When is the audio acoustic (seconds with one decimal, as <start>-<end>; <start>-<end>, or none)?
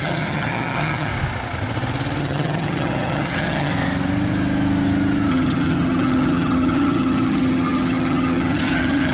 1.1-2.2; 3.7-5.3